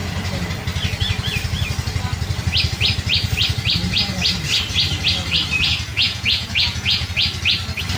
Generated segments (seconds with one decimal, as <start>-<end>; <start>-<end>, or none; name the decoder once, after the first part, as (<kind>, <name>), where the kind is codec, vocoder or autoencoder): 5.9-7.1 (vocoder, Vocos)